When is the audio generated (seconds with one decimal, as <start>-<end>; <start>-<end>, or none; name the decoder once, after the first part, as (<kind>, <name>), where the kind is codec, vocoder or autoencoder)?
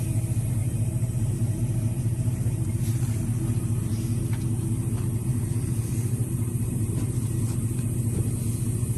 0.6-4.0 (vocoder, BigVGAN v2); 5.3-7.4